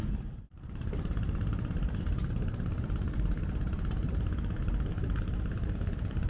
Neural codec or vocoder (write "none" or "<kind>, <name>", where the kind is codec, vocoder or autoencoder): vocoder, BigVGAN v2